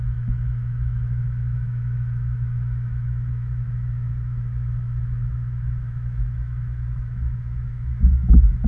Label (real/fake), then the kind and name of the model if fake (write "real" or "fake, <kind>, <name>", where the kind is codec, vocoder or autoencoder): fake, autoencoder, DAC-VAE